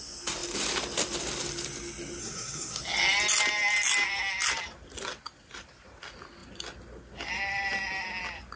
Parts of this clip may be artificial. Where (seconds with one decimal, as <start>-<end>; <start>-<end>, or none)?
2.2-2.8